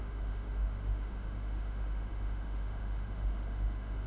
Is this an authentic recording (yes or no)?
no